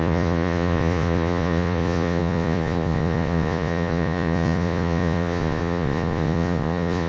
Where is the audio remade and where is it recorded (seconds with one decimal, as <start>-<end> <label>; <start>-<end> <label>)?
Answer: 0.0-7.1 remade